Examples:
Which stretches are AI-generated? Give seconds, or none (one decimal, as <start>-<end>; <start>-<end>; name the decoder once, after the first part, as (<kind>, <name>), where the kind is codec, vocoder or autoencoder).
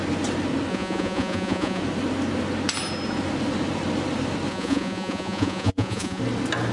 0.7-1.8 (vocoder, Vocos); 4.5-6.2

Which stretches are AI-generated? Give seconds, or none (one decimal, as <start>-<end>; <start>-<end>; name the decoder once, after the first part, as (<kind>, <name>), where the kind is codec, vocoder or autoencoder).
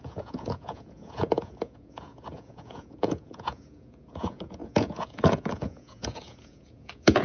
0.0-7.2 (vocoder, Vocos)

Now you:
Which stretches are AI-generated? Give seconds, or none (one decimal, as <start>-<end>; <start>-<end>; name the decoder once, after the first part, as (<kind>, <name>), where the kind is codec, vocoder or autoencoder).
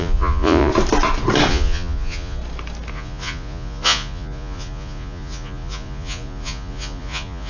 0.0-0.7 (vocoder, Vocos); 1.5-2.4; 2.9-7.5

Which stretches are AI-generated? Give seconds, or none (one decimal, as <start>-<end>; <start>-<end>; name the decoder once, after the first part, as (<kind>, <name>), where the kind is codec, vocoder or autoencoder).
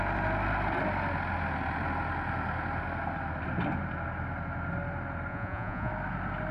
5.3-5.9 (vocoder, Vocos)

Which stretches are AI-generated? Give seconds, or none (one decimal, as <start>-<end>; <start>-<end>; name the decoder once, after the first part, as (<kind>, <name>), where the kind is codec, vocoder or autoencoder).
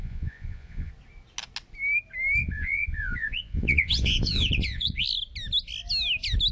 0.0-0.9 (vocoder, Vocos); 2.4-5.0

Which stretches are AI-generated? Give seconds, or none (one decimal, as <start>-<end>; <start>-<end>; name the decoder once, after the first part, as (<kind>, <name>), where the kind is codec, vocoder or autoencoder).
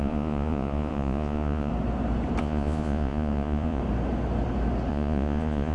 0.0-1.7 (vocoder, Vocos); 2.4-3.8; 4.9-5.7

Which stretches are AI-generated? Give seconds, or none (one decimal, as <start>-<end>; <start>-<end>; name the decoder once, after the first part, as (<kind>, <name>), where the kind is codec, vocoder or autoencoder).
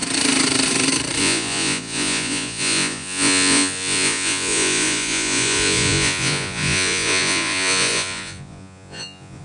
1.2-9.4 (vocoder, Vocos)